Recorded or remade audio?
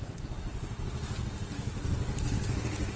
recorded